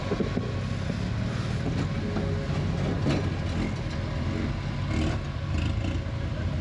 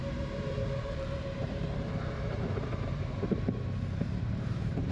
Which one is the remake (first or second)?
second